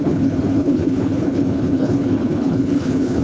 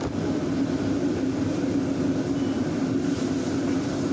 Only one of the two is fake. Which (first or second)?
first